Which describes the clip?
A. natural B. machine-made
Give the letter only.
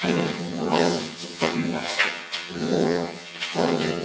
B